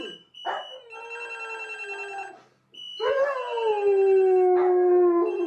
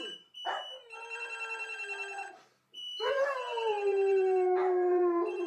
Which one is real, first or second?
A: first